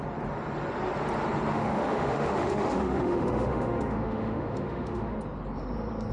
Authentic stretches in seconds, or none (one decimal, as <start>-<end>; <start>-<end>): 0.0-1.5; 5.2-6.1